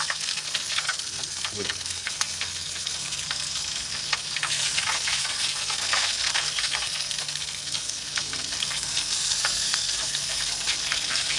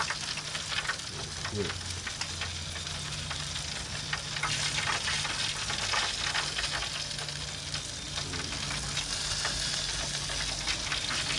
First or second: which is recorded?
second